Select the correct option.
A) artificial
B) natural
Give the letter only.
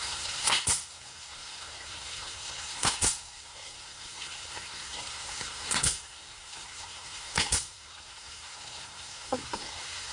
A